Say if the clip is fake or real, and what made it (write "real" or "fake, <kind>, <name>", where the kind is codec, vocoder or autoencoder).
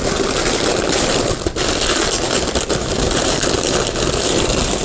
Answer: real